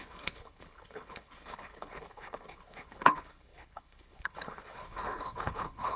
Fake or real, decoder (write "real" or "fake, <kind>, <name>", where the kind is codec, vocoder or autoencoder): fake, codec, HILCodec